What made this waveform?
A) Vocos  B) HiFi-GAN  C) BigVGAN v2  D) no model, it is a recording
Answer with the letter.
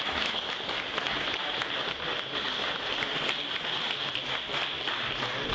D